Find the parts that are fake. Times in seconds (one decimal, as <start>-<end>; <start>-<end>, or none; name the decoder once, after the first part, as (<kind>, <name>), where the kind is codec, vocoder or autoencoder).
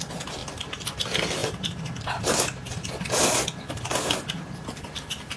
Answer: none